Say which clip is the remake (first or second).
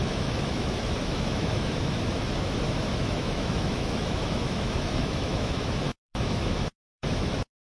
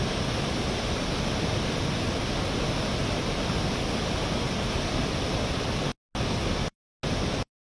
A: first